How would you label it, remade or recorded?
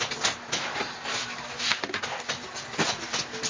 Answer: recorded